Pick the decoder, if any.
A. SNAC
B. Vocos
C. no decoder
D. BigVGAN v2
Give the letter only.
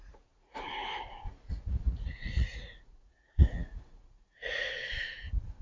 B